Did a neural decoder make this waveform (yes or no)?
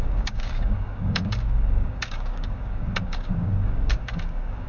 yes